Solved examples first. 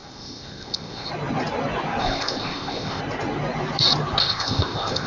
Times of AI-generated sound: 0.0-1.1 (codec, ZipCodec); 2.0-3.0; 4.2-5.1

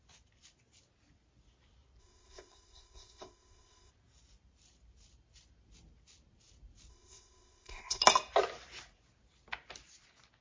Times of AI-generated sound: 2.0-3.9 (codec, ZipCodec); 6.9-8.0